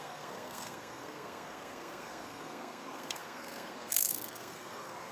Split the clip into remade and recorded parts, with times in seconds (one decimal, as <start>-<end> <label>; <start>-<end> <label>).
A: 0.0-5.1 remade